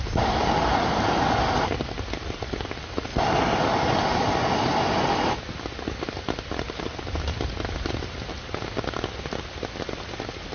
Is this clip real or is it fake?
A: real